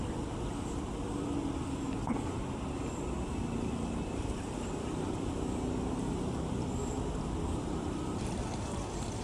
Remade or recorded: recorded